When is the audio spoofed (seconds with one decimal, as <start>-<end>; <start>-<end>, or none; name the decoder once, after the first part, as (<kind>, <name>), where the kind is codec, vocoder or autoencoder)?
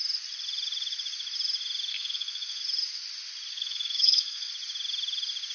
1.9-2.6 (codec, SNAC); 3.5-4.5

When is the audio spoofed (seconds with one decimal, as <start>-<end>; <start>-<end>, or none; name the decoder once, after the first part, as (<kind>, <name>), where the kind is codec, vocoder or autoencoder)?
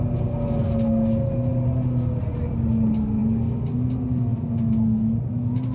none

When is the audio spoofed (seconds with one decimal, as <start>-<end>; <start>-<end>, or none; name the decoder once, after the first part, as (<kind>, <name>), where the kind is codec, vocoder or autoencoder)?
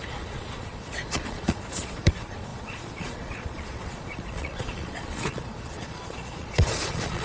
0.0-7.2 (vocoder, Vocos)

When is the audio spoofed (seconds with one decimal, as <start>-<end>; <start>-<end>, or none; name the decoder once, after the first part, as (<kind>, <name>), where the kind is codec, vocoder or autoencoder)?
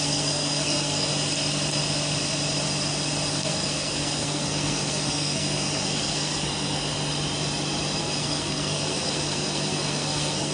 0.0-1.1 (codec, SNAC); 3.3-6.8; 8.0-10.5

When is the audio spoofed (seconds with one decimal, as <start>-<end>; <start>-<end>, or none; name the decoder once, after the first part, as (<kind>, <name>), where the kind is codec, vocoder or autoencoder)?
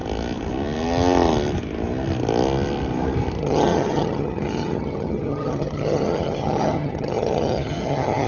3.4-8.3 (vocoder, HiFi-GAN)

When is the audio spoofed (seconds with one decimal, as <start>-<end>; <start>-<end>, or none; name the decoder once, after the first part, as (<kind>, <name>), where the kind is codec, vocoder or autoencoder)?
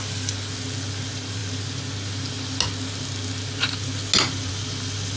none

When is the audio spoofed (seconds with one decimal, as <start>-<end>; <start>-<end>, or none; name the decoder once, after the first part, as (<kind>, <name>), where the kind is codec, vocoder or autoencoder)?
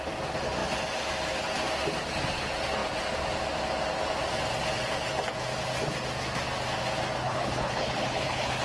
7.2-8.6 (codec, HILCodec)